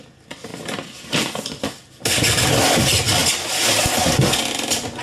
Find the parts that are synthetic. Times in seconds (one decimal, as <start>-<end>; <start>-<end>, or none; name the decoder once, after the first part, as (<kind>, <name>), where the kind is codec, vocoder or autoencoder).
none